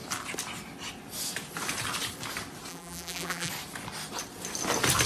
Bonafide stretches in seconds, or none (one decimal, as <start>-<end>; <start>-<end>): 0.0-2.7; 3.5-5.1